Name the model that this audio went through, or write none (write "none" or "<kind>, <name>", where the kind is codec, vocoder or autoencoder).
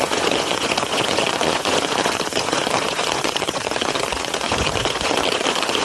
vocoder, Vocos